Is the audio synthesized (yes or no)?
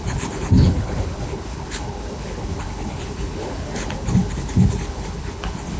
yes